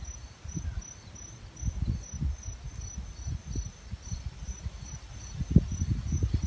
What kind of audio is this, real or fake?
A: real